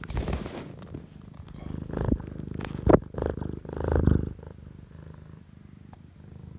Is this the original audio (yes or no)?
yes